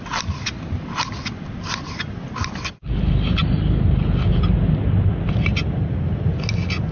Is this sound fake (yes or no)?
no